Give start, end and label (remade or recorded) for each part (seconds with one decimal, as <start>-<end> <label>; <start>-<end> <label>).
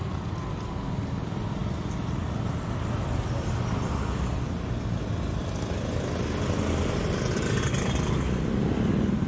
0.0-9.3 recorded